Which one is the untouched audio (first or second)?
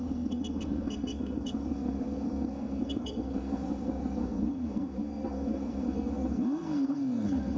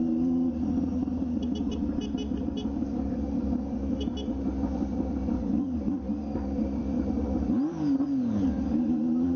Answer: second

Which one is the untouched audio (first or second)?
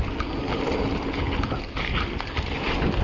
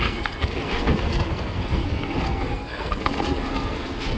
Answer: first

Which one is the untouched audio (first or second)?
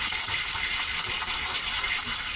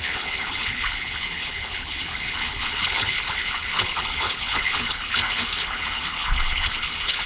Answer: first